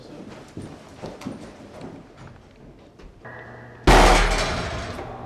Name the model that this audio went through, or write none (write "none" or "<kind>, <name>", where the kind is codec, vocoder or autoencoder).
none